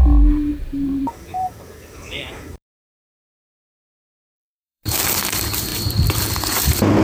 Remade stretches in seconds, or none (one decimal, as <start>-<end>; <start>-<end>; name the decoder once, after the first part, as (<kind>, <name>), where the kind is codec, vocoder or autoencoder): 0.0-5.7 (vocoder, BigVGAN v2)